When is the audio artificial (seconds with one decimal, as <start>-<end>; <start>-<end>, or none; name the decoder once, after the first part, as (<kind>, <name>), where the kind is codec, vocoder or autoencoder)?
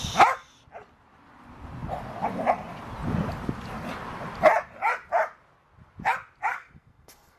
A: 6.5-7.4 (codec, SNAC)